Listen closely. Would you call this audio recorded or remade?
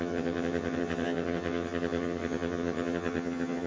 remade